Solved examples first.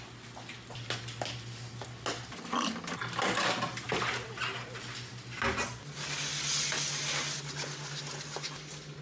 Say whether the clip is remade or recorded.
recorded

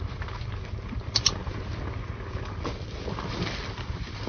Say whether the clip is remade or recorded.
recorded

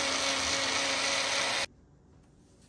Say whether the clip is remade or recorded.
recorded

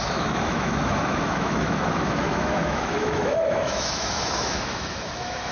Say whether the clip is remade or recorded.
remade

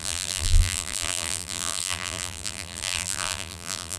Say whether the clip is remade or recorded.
remade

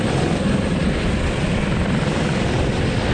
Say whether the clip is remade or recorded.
recorded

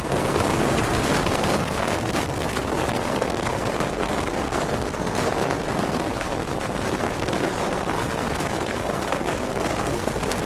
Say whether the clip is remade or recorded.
remade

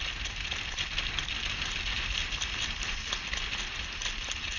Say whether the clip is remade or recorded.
recorded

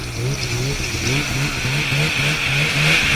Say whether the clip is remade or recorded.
recorded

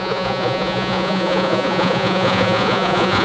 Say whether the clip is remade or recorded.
remade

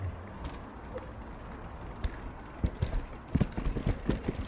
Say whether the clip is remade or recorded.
recorded